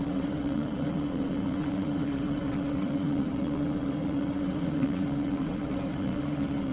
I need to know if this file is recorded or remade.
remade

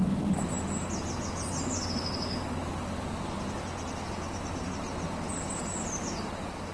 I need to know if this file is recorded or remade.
recorded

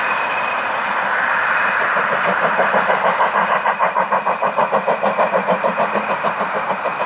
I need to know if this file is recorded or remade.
recorded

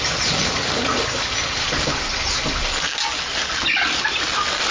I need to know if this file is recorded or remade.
recorded